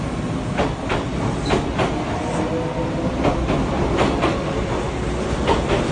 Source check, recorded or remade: recorded